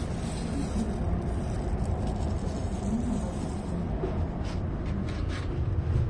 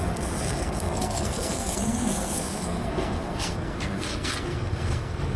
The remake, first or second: second